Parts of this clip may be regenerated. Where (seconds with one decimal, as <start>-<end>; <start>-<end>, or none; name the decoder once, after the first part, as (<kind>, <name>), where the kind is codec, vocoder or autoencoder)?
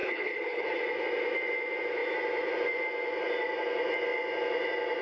0.0-0.8 (codec, HILCodec)